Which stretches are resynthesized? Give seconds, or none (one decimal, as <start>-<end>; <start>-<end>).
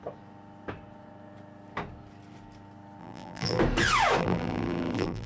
3.0-3.6; 4.2-5.3